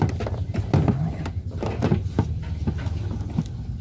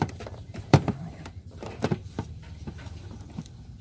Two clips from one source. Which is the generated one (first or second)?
second